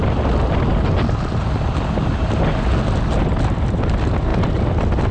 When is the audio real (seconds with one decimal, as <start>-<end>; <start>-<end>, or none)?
0.0-5.1